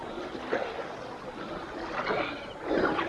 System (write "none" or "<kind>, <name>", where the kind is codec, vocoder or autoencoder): none